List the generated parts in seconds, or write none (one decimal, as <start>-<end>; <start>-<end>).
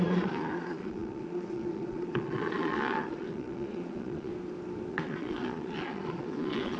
0.0-4.3; 4.9-6.8